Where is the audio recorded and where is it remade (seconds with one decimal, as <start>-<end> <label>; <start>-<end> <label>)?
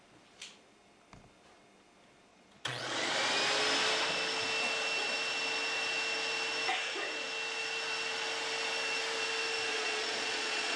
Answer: 0.0-2.3 recorded; 2.3-3.1 remade; 3.1-9.7 recorded; 9.7-10.8 remade